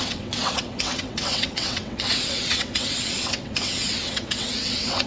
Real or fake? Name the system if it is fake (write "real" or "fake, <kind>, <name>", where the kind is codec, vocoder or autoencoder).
fake, vocoder, WaveNeXt